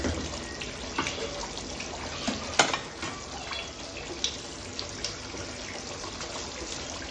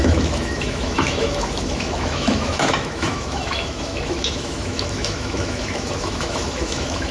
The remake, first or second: second